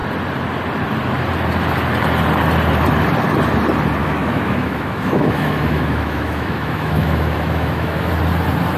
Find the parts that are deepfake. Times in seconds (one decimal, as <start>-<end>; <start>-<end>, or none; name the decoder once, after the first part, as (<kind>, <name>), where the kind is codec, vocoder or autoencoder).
4.0-8.1 (autoencoder, DAC-VAE)